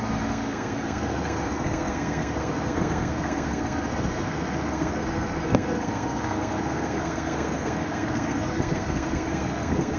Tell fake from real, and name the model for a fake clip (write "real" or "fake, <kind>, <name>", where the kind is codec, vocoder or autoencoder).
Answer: fake, codec, SNAC